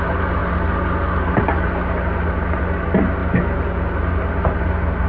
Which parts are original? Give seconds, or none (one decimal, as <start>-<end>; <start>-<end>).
0.0-5.1